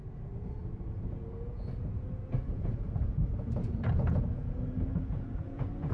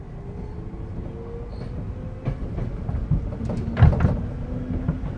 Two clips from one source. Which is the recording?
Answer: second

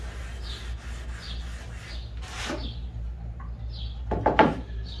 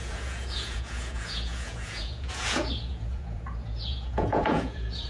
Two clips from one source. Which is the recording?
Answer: first